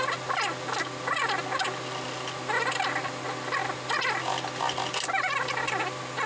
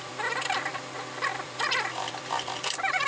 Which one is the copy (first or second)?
second